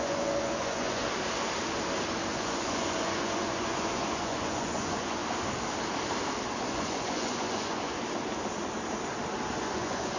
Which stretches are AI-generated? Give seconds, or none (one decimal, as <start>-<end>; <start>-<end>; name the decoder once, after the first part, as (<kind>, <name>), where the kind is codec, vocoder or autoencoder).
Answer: 0.0-1.0 (vocoder, Vocos); 2.3-5.2; 6.6-7.9; 9.6-10.2